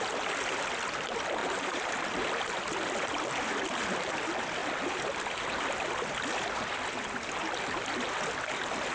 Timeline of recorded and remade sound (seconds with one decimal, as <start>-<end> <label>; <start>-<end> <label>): 0.0-1.4 recorded; 1.4-2.0 remade; 2.0-8.9 recorded